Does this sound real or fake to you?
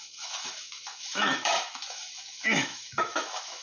fake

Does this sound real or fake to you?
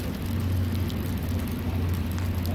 real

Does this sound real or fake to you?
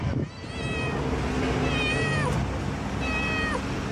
real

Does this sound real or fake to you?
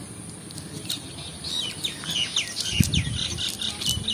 real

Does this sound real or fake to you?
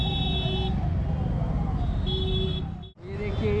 real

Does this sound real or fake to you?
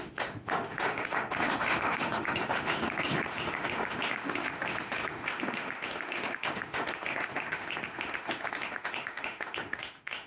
fake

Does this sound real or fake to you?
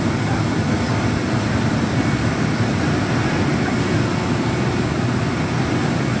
real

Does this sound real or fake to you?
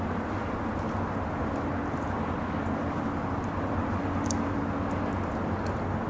real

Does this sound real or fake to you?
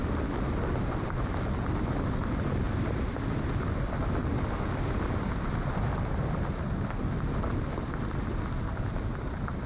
real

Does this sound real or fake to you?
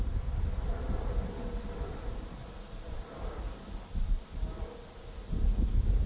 real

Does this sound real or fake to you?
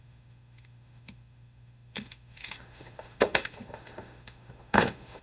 fake